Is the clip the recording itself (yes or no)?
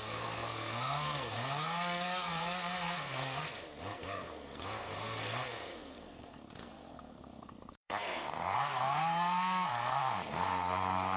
no